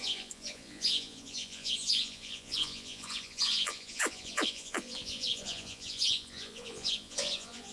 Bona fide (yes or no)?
no